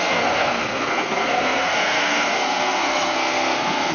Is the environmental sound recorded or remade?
remade